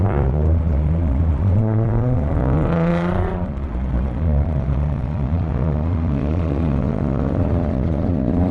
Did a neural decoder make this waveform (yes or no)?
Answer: yes